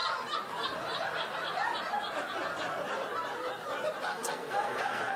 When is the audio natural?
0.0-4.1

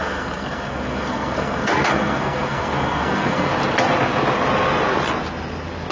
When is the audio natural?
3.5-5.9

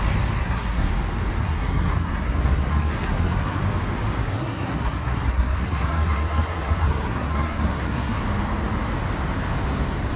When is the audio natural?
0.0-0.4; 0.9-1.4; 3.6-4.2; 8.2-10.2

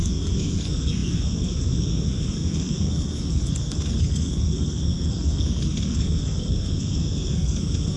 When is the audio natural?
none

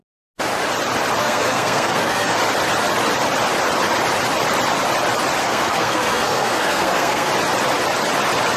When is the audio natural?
0.0-1.2; 2.4-5.4; 7.3-8.6

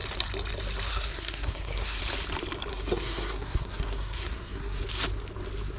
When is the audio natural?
0.0-0.9; 2.0-2.7; 4.8-5.8

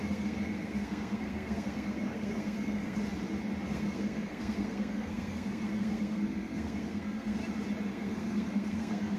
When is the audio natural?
3.0-3.7; 7.4-7.9

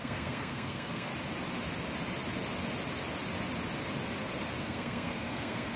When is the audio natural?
1.1-4.6